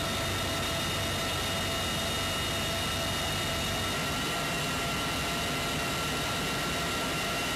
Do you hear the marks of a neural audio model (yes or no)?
no